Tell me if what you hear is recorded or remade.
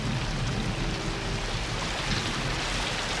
recorded